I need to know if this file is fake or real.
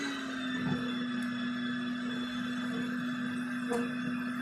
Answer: real